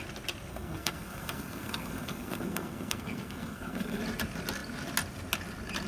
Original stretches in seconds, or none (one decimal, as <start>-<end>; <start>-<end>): 0.0-0.5; 4.0-5.9